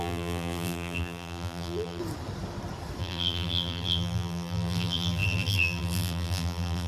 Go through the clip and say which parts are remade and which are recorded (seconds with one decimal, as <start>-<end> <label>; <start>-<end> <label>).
0.0-2.0 remade; 2.0-3.0 recorded; 3.0-6.9 remade